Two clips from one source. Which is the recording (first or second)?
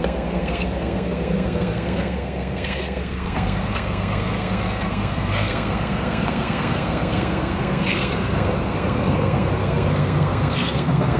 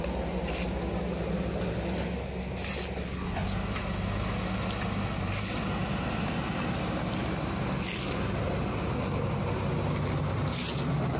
second